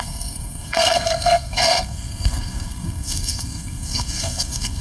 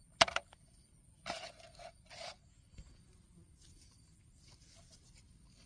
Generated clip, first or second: first